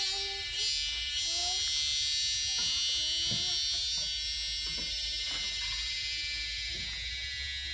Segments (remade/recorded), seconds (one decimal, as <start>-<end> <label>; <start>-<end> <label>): 0.0-7.7 recorded